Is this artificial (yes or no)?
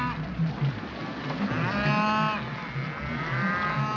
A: no